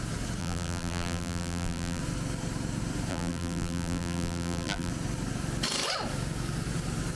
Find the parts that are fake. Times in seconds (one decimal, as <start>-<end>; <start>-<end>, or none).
0.4-2.0; 3.1-4.9